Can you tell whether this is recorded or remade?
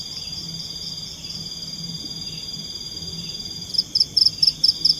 recorded